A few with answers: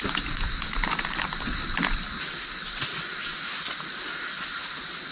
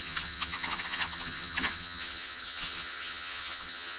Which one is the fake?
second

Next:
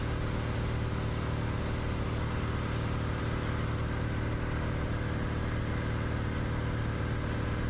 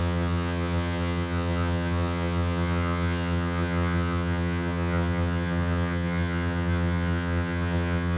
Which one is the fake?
second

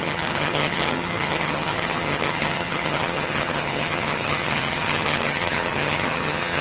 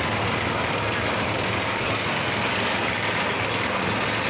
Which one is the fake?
first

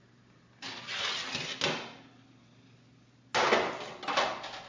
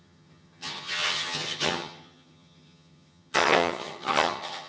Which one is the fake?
second